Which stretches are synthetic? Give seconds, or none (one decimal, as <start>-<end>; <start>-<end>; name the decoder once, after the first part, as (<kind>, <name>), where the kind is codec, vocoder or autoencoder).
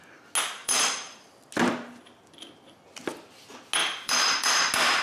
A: 0.6-1.3 (vocoder, BigVGAN v2); 3.8-4.6